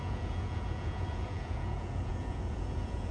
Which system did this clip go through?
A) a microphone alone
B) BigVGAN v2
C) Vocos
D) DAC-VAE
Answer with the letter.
C